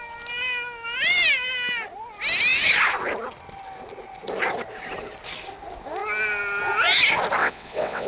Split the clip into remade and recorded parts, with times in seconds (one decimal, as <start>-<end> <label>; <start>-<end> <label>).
0.0-7.4 recorded; 7.4-8.1 remade